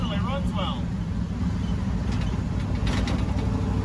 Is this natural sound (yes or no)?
yes